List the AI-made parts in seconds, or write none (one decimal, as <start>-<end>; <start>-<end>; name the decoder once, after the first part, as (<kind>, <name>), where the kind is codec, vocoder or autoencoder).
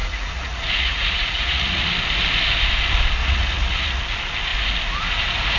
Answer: 0.0-1.8 (vocoder, Vocos); 3.2-4.0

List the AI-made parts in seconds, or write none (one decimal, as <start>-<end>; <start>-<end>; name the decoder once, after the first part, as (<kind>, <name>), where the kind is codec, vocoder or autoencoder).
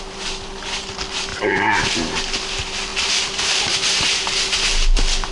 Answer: none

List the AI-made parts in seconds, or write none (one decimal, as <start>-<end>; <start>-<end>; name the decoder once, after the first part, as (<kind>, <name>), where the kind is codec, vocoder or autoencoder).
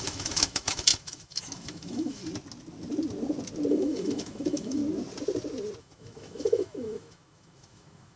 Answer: 0.0-2.2 (autoencoder, DAC-VAE); 3.7-4.8; 5.8-8.2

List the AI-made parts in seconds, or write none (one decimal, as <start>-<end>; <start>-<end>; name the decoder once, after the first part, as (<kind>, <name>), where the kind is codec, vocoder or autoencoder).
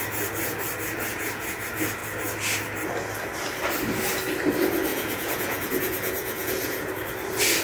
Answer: 1.1-1.6 (vocoder, Vocos); 4.9-6.9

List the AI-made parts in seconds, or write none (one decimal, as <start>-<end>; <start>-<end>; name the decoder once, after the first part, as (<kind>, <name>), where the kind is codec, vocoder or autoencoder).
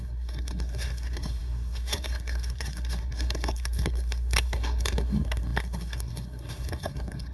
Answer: 0.0-7.3 (codec, SNAC)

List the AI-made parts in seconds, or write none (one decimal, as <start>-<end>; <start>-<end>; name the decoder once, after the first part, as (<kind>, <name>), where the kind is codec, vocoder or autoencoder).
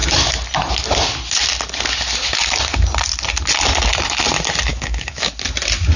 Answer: 4.7-5.3 (autoencoder, DAC-VAE)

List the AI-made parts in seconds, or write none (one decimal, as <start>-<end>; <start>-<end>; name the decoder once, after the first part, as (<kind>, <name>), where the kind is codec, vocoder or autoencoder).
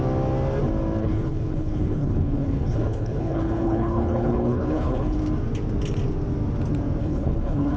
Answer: 1.0-5.2 (codec, HILCodec); 7.0-7.8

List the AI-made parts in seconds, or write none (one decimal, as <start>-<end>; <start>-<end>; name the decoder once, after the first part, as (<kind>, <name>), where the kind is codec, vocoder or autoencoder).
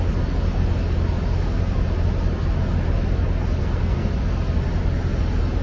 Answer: 3.6-4.1 (codec, SNAC)